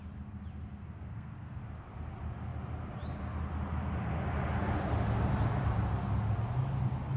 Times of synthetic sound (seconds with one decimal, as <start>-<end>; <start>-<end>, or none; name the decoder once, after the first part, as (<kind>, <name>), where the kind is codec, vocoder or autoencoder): 0.8-1.6 (codec, SNAC)